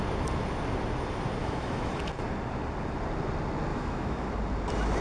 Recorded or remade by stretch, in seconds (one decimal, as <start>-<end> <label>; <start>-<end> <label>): 0.0-1.4 recorded; 1.4-2.0 remade; 2.0-3.7 recorded; 3.7-4.3 remade; 4.3-5.0 recorded